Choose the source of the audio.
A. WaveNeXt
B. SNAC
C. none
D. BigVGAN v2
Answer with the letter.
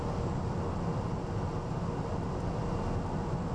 C